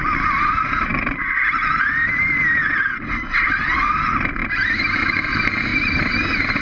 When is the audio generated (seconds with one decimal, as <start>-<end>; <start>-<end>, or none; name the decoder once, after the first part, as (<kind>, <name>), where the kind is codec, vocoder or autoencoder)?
4.4-5.3 (vocoder, BigVGAN v2); 5.7-6.6